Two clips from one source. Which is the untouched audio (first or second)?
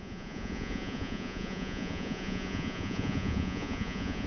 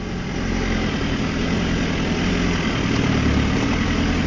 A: second